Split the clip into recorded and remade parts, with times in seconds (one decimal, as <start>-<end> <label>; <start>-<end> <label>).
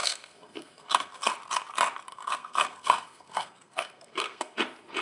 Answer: 0.0-1.3 remade; 1.3-2.1 recorded; 2.1-4.6 remade; 4.6-5.0 recorded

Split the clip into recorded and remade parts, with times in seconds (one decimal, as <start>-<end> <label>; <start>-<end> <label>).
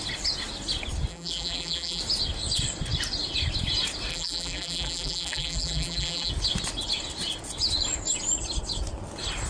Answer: 0.0-1.1 recorded; 1.1-2.0 remade; 2.0-4.1 recorded; 4.1-6.3 remade; 6.3-9.5 recorded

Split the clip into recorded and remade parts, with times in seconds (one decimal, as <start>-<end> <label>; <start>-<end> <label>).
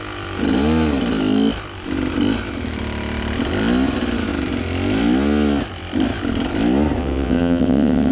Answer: 0.0-7.0 recorded; 7.0-8.1 remade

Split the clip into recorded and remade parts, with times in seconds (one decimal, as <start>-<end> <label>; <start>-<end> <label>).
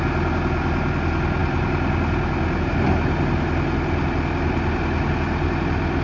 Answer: 0.0-6.0 recorded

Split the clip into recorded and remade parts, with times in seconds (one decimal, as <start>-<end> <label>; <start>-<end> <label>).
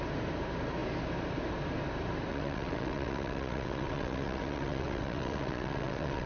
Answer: 0.0-2.3 recorded; 2.3-6.3 remade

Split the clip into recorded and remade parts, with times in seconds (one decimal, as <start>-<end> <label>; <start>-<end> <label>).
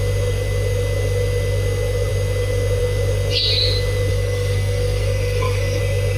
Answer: 0.0-4.1 recorded; 4.1-5.8 remade; 5.8-6.2 recorded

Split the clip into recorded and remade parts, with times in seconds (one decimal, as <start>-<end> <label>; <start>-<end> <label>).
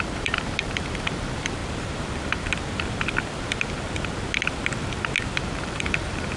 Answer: 0.0-1.6 remade; 1.6-5.4 recorded; 5.4-6.4 remade